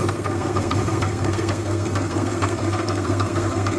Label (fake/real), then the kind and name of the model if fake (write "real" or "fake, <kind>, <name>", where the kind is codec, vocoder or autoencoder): fake, codec, SNAC